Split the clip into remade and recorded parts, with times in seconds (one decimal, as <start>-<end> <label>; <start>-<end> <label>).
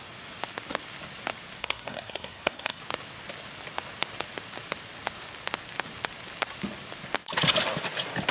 0.0-1.6 recorded; 1.6-2.8 remade; 2.8-8.3 recorded